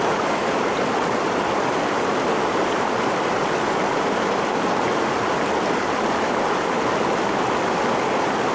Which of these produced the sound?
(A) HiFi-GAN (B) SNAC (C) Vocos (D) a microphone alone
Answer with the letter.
D